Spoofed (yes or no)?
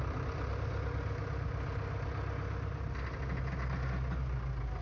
no